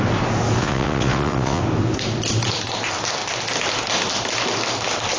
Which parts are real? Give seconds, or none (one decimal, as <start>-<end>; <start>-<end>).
0.0-0.6; 1.6-5.2